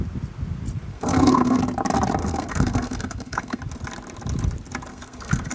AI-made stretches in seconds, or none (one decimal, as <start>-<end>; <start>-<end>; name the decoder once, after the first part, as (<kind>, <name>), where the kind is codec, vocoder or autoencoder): 0.9-1.6 (codec, SNAC); 2.2-3.6; 4.9-5.5